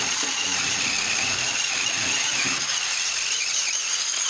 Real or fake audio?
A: real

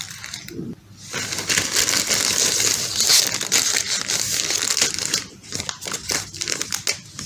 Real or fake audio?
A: real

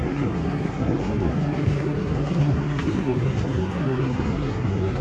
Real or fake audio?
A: fake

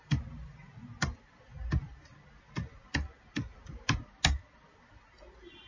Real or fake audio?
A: real